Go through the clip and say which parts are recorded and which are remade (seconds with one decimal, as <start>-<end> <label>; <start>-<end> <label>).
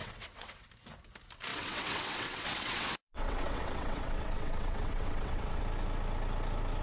0.0-0.7 remade; 0.7-1.5 recorded; 1.5-5.6 remade; 5.6-6.8 recorded